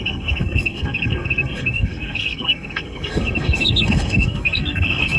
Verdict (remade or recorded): remade